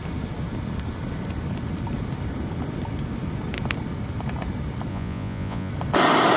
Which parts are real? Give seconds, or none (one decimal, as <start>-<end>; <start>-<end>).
0.0-4.9; 5.7-6.4